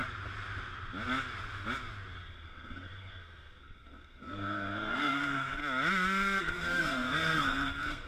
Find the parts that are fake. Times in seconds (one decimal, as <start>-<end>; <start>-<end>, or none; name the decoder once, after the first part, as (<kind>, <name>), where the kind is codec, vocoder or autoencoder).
2.3-5.6 (codec, SNAC); 6.4-8.1